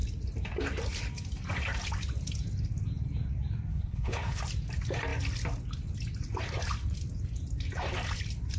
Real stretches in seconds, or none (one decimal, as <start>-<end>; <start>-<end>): 0.0-3.7; 4.4-8.6